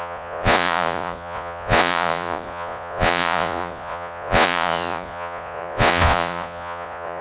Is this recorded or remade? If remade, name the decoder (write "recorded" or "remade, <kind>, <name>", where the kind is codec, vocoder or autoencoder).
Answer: remade, vocoder, Vocos